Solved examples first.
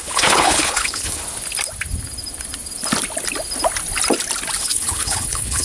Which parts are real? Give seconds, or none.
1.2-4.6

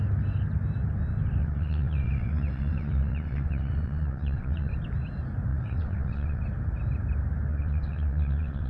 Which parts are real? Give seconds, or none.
0.0-1.4; 4.7-5.5; 6.4-7.5

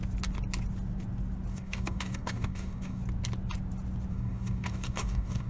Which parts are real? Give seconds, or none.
0.0-1.5; 3.0-4.1

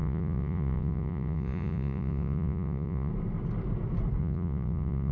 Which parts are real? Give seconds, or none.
3.1-4.2